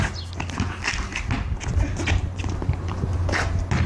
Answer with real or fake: real